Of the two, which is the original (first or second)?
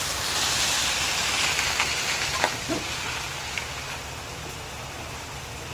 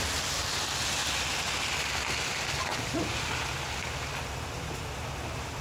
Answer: second